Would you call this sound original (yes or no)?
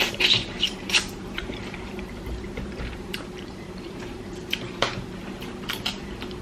no